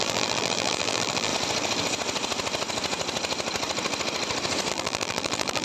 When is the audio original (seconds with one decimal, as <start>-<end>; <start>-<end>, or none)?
1.3-4.7